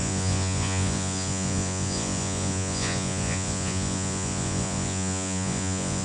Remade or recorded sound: remade